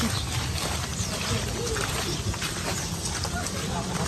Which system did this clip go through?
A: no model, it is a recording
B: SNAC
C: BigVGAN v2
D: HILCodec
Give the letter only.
C